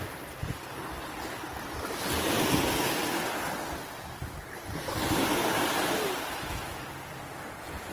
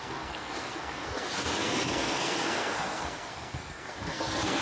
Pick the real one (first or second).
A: first